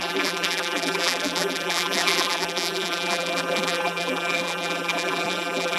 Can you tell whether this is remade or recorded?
remade